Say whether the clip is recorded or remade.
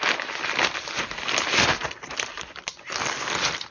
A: recorded